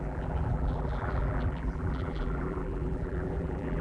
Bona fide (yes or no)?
no